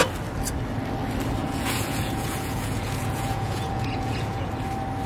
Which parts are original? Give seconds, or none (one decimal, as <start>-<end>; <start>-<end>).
0.0-1.4; 4.5-5.1